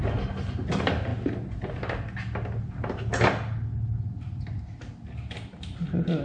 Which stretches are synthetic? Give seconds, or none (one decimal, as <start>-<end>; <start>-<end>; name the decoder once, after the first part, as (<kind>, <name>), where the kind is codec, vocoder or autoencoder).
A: none